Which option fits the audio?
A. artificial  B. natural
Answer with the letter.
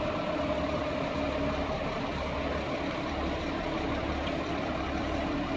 A